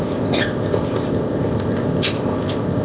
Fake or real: fake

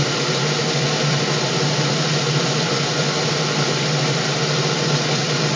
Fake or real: real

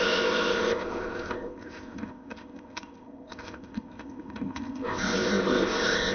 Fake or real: fake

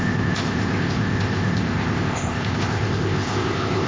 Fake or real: fake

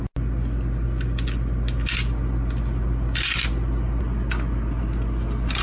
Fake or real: real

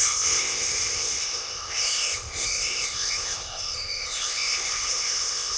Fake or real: fake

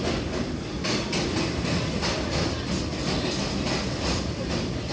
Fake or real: real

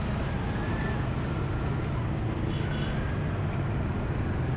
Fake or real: real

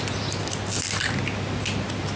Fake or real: real